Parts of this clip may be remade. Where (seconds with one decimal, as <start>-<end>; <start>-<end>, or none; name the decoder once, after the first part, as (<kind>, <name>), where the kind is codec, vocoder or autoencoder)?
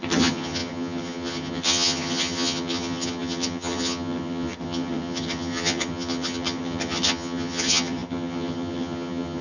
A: 0.0-9.4 (vocoder, HiFi-GAN)